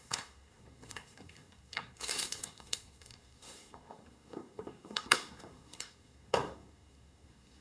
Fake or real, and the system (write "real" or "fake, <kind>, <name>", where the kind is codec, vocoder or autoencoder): fake, codec, SNAC